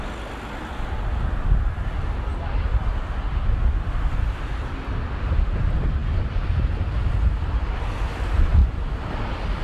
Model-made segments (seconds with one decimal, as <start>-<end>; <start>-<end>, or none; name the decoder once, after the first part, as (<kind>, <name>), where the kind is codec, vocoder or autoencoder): 2.3-2.9 (vocoder, BigVGAN v2); 6.0-7.1